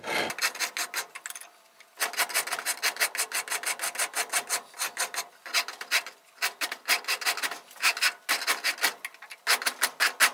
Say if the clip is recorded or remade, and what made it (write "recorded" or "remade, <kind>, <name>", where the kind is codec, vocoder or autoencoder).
recorded